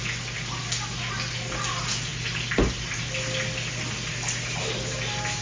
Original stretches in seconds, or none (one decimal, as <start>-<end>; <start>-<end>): 0.0-5.4